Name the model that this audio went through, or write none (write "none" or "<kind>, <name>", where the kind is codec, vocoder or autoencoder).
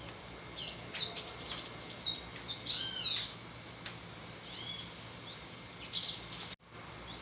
none